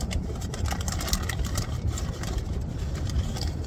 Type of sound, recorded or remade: remade